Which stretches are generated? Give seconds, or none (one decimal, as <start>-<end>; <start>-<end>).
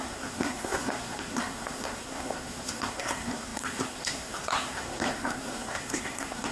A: 0.0-6.5